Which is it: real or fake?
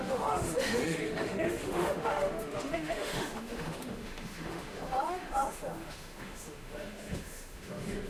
fake